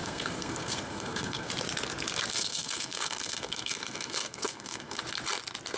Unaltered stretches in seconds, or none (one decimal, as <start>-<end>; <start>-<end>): 1.5-2.3; 5.0-5.8